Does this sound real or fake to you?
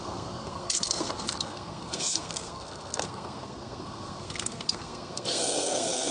fake